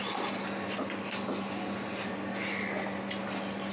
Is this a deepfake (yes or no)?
no